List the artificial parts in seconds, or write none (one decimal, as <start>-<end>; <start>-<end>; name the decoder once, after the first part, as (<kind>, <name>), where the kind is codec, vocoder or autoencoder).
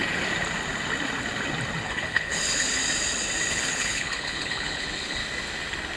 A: 1.8-2.8 (codec, HILCodec); 3.5-5.2